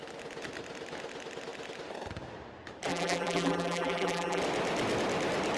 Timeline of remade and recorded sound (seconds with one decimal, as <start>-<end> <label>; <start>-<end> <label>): 0.0-2.9 recorded; 2.9-4.4 remade; 4.4-5.6 recorded